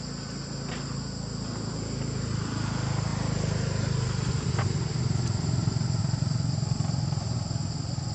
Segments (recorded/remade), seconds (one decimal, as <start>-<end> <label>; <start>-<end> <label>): 0.0-8.1 recorded